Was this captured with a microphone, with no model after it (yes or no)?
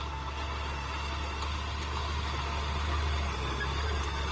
yes